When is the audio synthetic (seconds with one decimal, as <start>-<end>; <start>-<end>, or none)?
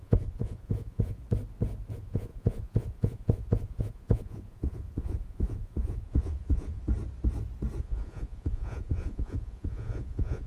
0.0-1.2; 1.9-6.8; 7.8-10.5